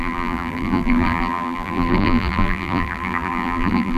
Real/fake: fake